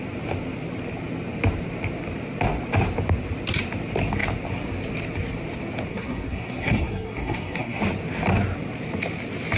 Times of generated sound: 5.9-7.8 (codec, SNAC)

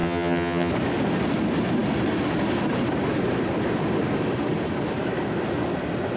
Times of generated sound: 0.0-0.7 (vocoder, HiFi-GAN)

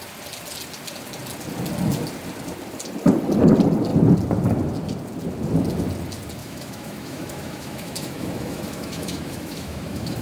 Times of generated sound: 6.4-10.2 (autoencoder, DAC-VAE)

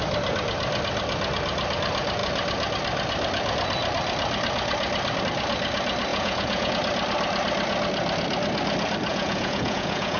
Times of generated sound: 6.1-6.7 (vocoder, Vocos); 9.1-10.2

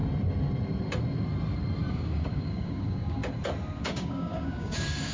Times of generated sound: 1.9-3.2 (codec, DAC); 3.8-5.1

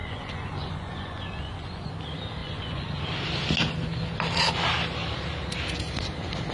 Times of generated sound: 0.0-1.9 (vocoder, Vocos); 2.4-2.9

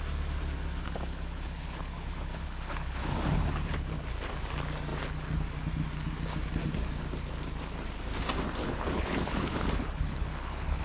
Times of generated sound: 0.8-4.0 (codec, HILCodec); 8.6-10.8

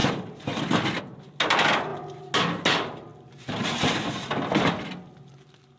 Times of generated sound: none